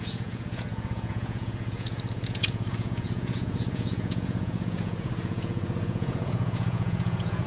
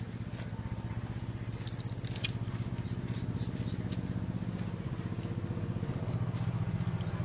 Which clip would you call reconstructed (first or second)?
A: first